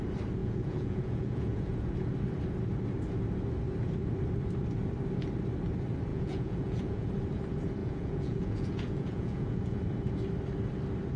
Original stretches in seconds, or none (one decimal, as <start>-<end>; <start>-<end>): 0.0-0.4; 1.9-6.1; 7.1-7.8; 9.8-11.2